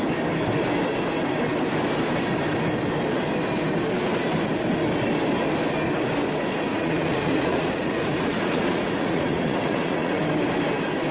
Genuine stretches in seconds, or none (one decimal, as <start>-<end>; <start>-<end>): 0.0-6.7; 10.2-11.1